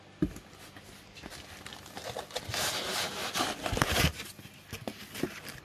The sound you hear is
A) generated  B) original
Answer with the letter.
B